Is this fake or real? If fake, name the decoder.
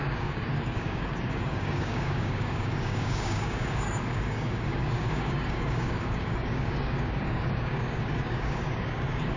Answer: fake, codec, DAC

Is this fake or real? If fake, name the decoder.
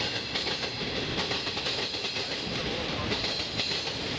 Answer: real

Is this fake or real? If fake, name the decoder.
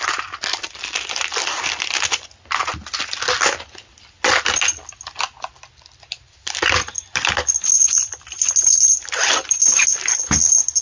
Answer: real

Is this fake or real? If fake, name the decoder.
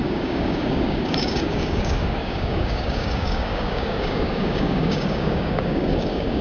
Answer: fake, codec, DAC